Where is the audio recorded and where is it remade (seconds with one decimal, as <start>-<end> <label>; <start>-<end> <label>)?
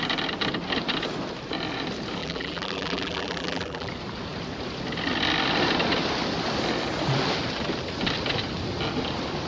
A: 0.0-2.2 recorded; 2.2-3.9 remade; 3.9-9.5 recorded